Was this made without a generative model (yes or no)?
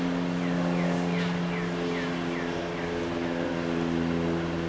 yes